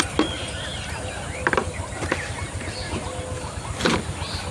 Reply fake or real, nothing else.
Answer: real